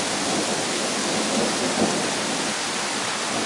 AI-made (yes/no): yes